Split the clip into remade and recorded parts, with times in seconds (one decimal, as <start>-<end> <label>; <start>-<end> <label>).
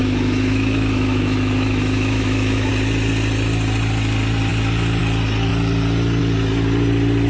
0.0-2.7 remade; 2.7-7.3 recorded